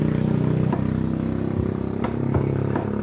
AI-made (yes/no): no